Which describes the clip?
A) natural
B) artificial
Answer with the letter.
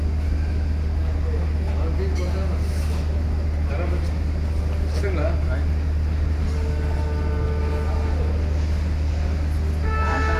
A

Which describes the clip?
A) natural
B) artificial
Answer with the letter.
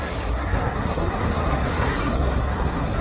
B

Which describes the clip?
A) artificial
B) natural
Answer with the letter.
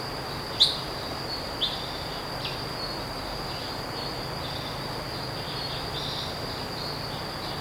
B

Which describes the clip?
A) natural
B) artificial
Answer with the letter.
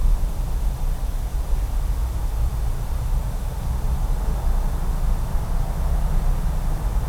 A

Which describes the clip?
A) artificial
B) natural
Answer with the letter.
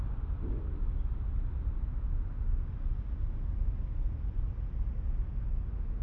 B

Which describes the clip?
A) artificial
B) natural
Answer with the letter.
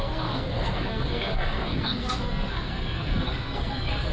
A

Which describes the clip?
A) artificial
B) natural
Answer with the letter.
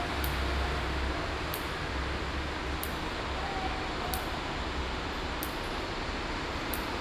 B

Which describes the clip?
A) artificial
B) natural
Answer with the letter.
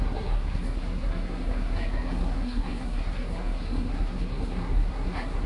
A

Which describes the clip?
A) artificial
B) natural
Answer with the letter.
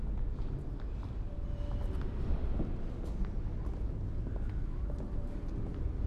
B